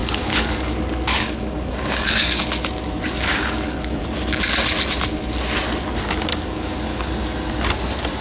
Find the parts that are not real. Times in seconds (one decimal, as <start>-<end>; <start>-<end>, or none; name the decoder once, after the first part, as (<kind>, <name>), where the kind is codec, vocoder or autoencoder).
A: 0.0-2.4 (codec, DAC); 3.3-4.0; 6.3-7.1